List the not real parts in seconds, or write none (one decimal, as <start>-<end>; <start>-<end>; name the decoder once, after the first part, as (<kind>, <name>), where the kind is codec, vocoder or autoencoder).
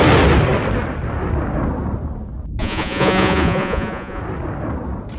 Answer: 2.6-4.2 (vocoder, Vocos)